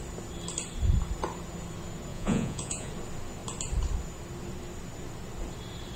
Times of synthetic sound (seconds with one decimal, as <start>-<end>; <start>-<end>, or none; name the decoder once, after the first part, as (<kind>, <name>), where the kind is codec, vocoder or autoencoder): 2.1-2.9 (vocoder, Vocos)